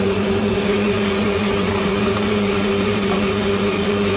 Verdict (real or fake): fake